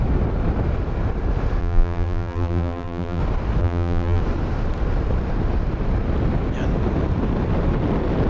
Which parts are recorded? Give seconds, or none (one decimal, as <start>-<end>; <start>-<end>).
0.0-1.6; 3.2-3.6; 4.2-8.3